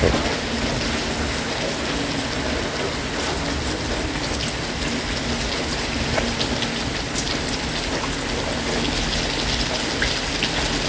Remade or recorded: recorded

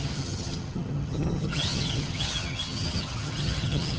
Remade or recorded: remade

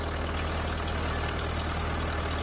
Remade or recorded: recorded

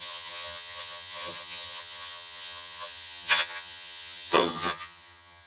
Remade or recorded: remade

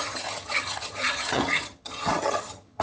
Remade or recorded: remade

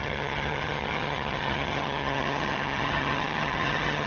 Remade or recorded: remade